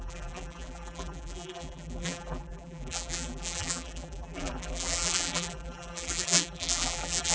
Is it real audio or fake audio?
fake